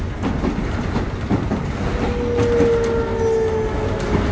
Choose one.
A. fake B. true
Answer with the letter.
B